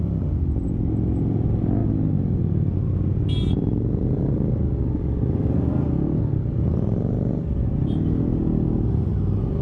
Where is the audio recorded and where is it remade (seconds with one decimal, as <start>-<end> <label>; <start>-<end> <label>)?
0.0-9.6 recorded